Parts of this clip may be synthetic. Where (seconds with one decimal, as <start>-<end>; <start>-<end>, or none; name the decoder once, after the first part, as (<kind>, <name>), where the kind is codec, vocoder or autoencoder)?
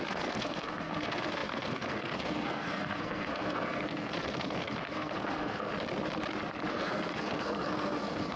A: 0.0-5.7 (codec, SNAC); 6.7-8.4